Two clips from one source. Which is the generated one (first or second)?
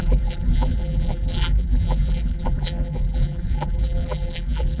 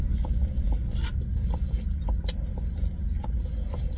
first